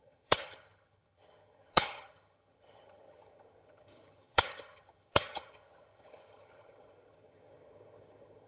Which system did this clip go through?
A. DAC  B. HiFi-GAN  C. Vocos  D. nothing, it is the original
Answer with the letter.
B